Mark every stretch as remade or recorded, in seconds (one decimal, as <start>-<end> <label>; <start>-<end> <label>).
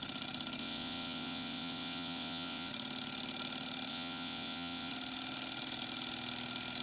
0.0-0.6 recorded; 0.6-2.7 remade; 2.7-3.9 recorded; 3.9-4.9 remade; 4.9-6.8 recorded